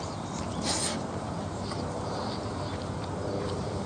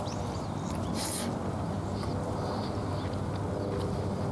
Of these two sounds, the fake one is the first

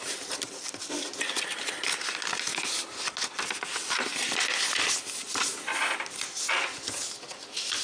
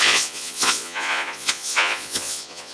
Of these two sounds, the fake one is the second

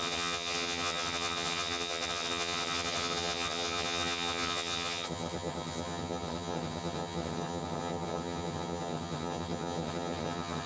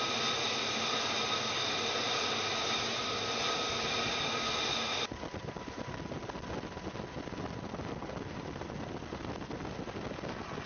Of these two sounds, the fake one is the first